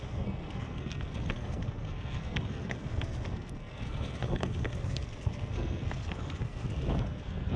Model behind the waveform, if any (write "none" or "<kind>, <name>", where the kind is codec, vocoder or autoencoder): codec, SNAC